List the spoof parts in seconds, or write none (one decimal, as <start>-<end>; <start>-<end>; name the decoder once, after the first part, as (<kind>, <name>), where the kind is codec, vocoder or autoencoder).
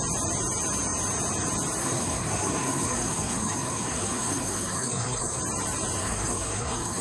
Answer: 1.8-5.4 (codec, SNAC); 6.0-7.0